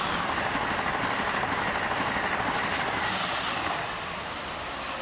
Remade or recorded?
recorded